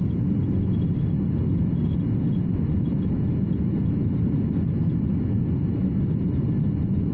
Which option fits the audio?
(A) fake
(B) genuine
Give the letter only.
B